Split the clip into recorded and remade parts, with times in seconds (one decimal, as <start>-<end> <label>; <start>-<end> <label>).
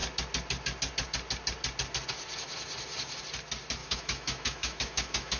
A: 0.0-3.8 recorded; 3.8-5.4 remade